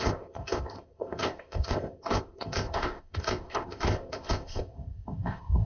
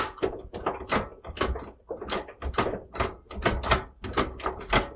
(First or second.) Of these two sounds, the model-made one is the first